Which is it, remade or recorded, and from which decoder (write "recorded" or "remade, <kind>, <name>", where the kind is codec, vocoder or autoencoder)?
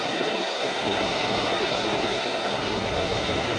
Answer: remade, codec, SNAC